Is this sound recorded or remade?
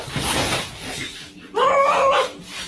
recorded